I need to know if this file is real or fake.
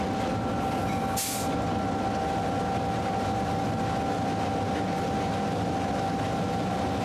real